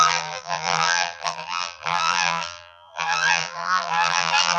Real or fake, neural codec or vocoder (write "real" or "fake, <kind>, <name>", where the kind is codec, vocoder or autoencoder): fake, vocoder, BigVGAN v2